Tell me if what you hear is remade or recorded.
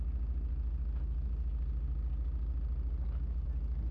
recorded